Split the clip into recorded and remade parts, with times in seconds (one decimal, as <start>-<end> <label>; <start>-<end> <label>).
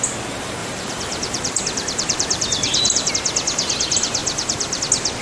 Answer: 0.0-0.6 recorded; 0.6-3.1 remade; 3.1-4.2 recorded; 4.2-4.8 remade; 4.8-5.2 recorded